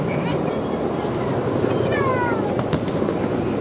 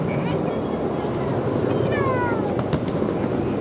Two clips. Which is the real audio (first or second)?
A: second